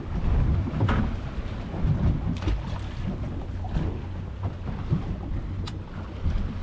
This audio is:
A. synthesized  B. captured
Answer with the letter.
B